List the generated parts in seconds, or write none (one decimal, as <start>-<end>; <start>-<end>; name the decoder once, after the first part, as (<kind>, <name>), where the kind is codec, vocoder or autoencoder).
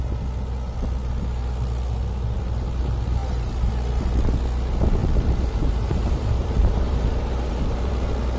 3.2-3.7 (vocoder, BigVGAN v2); 5.0-7.9